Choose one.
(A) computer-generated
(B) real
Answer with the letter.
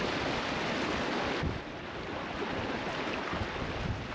B